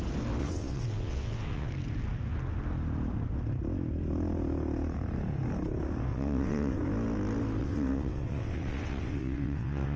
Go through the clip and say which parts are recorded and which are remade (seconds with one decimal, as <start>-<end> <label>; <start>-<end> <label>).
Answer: 0.0-0.4 recorded; 0.4-1.7 remade; 1.7-6.1 recorded; 6.1-6.8 remade; 6.8-7.6 recorded; 7.6-10.0 remade